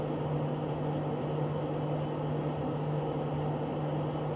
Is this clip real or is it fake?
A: real